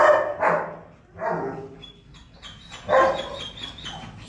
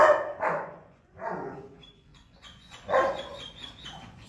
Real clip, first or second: first